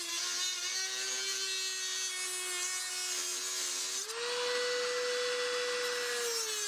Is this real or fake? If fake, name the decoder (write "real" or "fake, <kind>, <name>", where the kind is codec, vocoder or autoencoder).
real